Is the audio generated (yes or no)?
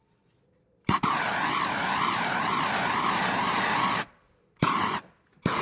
no